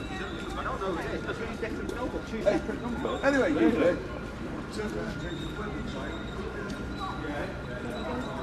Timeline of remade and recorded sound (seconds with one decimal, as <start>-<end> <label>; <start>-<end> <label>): 0.0-0.9 recorded; 0.9-2.0 remade; 2.0-3.0 recorded; 3.0-4.6 remade; 4.6-8.4 recorded